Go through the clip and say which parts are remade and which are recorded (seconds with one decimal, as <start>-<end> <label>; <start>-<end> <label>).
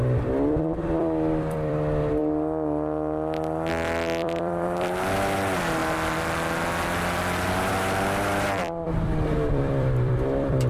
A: 0.0-2.2 remade; 2.2-3.7 recorded; 3.7-5.8 remade; 5.8-7.7 recorded; 7.7-10.7 remade